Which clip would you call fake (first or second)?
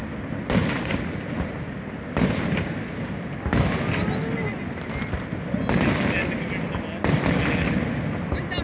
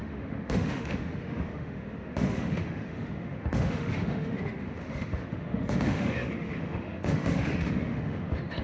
second